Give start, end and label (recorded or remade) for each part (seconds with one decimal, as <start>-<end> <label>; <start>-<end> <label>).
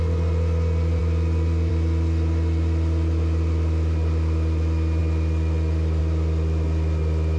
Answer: 0.0-7.4 recorded